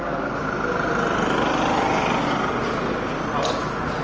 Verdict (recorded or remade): recorded